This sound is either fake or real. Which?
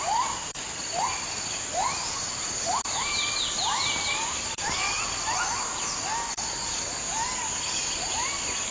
real